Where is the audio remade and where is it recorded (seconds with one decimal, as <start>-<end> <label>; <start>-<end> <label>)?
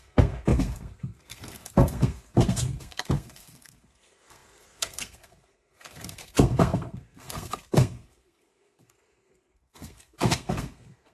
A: 0.0-11.1 remade